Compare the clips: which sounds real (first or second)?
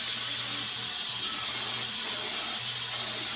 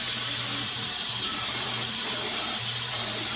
first